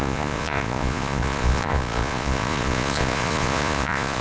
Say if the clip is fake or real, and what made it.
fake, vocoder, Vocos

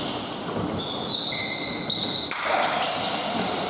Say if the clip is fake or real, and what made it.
real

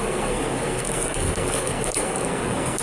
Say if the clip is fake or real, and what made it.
fake, codec, SNAC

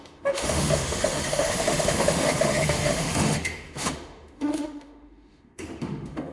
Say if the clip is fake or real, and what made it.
fake, autoencoder, DAC-VAE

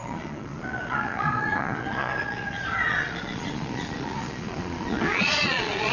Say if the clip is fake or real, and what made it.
fake, vocoder, Vocos